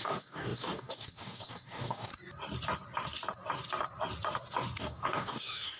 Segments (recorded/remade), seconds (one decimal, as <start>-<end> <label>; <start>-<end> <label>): 0.0-2.1 remade; 2.1-4.8 recorded; 4.8-5.8 remade